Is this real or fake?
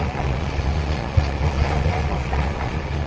fake